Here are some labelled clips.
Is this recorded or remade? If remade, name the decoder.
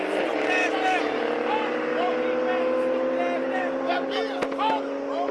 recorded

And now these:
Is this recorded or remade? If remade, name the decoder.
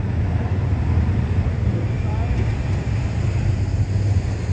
recorded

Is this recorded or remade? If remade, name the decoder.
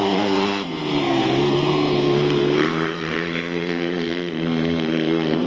remade, codec, SNAC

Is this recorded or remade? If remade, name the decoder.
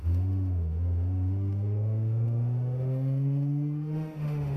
remade, autoencoder, DAC-VAE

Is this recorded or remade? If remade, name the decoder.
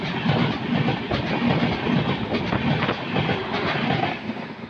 recorded